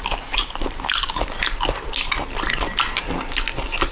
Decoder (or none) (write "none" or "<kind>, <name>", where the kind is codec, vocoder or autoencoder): none